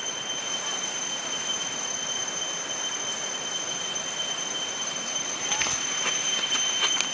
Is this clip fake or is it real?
real